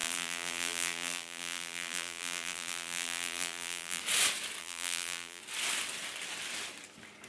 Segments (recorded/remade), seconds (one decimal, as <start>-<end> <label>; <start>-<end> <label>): 0.0-4.0 remade; 4.0-4.6 recorded; 4.6-5.4 remade; 5.4-7.3 recorded